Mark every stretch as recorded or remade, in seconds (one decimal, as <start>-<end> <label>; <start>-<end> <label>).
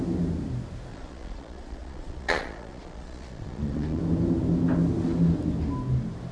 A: 0.0-0.9 recorded; 0.9-4.0 remade; 4.0-6.3 recorded